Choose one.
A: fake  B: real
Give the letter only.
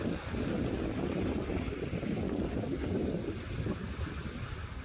B